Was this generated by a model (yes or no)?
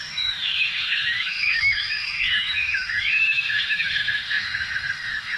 yes